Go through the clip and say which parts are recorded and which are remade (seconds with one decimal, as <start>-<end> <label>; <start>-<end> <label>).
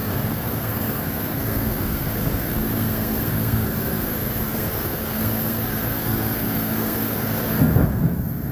0.0-8.5 remade